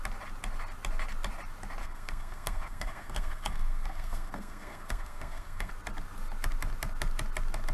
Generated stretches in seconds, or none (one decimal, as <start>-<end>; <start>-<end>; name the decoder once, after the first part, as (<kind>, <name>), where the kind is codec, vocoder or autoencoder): 1.8-5.7 (codec, SNAC)